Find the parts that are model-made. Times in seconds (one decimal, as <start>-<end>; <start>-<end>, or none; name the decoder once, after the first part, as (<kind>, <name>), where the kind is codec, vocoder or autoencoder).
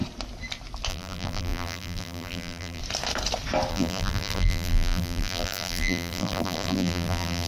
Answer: 0.9-2.8 (vocoder, BigVGAN v2); 3.7-7.5